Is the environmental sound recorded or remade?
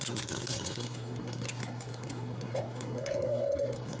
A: remade